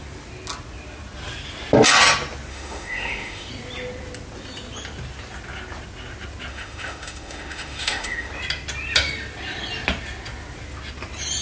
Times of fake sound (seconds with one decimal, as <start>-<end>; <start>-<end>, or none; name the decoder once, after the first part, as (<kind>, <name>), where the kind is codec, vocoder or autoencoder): 2.5-3.5 (autoencoder, DAC-VAE); 6.5-8.3